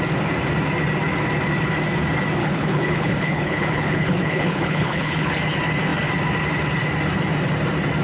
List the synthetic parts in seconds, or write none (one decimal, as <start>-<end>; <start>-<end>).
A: 2.4-5.4